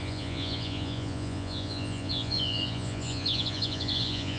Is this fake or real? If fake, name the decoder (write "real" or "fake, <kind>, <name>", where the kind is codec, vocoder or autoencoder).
fake, vocoder, Vocos